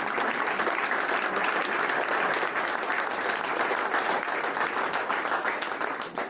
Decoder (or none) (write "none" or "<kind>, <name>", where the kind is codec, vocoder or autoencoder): none